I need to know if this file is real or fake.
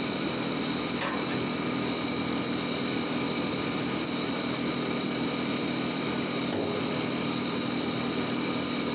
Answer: real